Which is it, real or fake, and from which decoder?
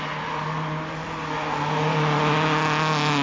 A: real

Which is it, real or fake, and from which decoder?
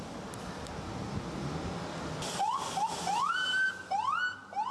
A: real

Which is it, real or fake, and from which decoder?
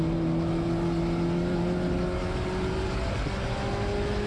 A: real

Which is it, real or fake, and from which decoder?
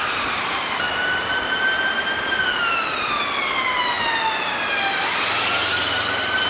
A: real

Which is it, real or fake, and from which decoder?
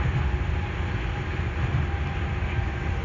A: real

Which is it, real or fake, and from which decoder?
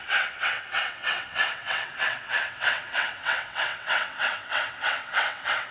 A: fake, vocoder, WaveNeXt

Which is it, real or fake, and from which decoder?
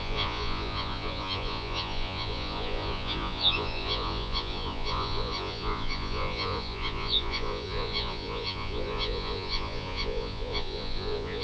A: fake, vocoder, Vocos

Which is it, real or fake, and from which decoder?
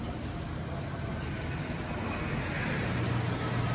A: real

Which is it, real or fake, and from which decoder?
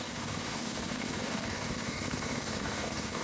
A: fake, codec, DAC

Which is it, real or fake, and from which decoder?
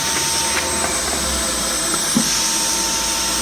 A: real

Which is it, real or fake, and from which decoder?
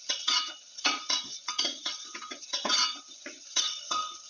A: fake, vocoder, WaveNeXt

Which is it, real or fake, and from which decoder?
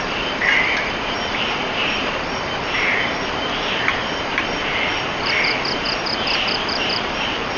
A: fake, vocoder, BigVGAN v2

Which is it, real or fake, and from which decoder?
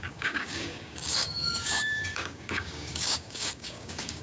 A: fake, codec, DAC